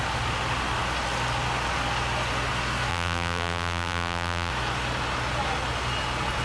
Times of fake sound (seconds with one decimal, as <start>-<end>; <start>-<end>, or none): 2.9-4.5